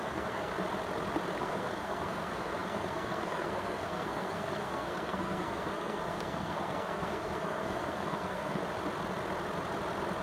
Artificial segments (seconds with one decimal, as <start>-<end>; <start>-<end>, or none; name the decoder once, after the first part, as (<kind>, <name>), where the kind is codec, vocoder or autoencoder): 0.0-0.5 (codec, SNAC); 1.4-8.6